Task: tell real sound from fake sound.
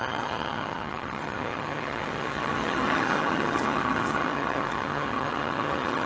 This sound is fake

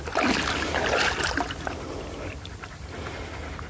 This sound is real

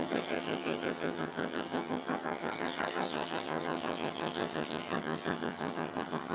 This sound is fake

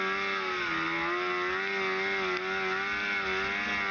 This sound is real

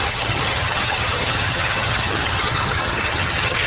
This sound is fake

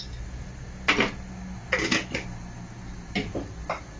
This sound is real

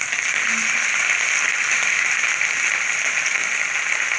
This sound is real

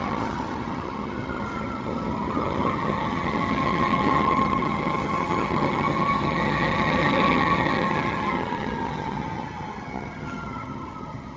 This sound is fake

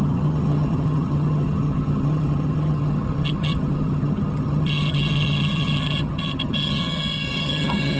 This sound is fake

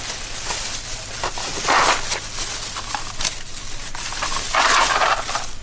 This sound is real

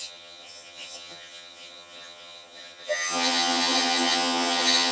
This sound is fake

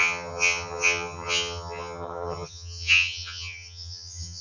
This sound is fake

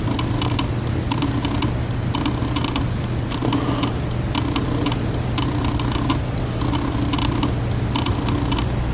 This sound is real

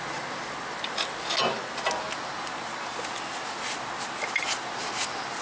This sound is real